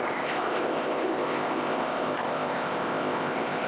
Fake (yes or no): yes